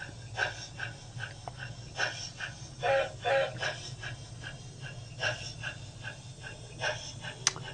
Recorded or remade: recorded